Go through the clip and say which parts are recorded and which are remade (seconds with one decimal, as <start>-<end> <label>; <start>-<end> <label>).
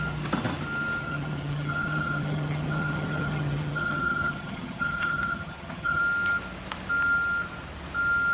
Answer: 0.0-1.0 recorded; 1.0-6.0 remade; 6.0-8.3 recorded